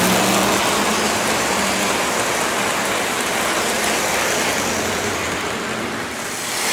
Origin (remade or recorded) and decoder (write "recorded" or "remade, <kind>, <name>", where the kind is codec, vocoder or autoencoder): recorded